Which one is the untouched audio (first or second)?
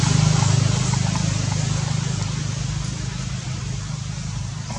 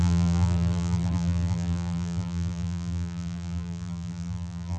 first